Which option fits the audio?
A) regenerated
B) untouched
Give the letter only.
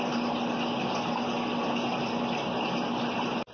B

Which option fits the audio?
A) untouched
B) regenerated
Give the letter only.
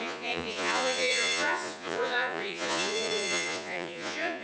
B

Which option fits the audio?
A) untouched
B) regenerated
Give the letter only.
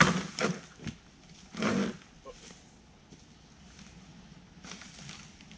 A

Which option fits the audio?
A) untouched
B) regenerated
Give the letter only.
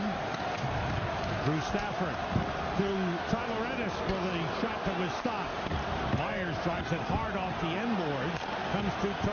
A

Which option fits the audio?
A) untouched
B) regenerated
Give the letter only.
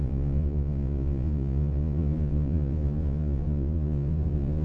B